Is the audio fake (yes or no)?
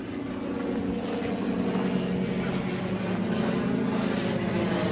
no